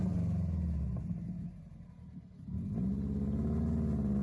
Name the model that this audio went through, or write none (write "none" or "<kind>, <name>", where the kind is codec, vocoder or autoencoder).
none